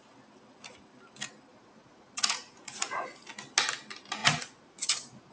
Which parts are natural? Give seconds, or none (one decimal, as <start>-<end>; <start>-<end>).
0.0-1.5; 3.3-4.2